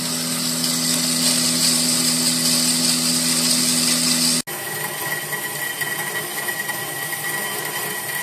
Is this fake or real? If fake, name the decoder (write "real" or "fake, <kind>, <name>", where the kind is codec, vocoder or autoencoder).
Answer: real